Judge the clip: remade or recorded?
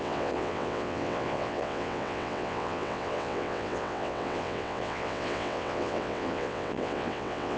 remade